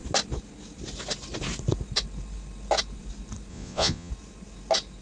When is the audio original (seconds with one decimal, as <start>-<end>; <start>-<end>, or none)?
0.0-3.5; 4.1-5.0